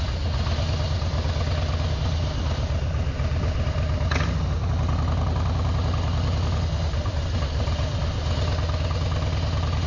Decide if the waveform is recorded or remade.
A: recorded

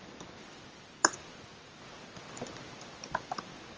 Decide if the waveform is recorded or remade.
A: recorded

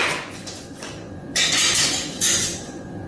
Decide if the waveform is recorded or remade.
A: remade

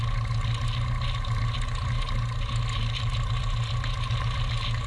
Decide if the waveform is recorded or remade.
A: recorded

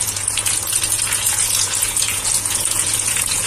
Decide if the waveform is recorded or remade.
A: remade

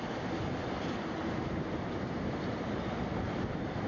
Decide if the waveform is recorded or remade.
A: recorded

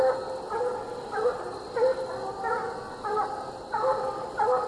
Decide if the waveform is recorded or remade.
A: recorded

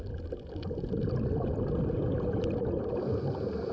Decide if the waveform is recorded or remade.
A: recorded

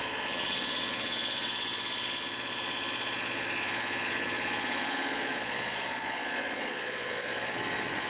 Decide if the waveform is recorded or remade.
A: remade